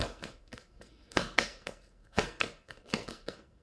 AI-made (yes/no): yes